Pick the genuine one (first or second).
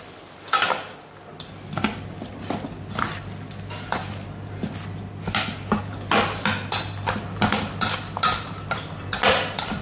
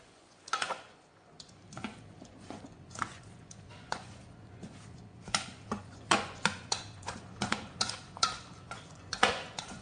first